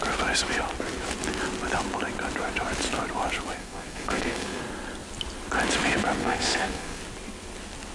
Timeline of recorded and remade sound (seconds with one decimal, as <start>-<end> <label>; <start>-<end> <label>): 0.0-3.6 recorded; 3.6-4.6 remade; 4.6-6.2 recorded; 6.2-7.0 remade; 7.0-7.9 recorded